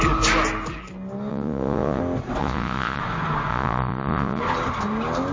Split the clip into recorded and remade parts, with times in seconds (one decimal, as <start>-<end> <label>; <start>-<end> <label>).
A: 0.0-1.3 recorded; 1.3-2.0 remade; 2.0-2.4 recorded; 2.4-3.0 remade; 3.0-3.5 recorded; 3.5-4.4 remade; 4.4-5.3 recorded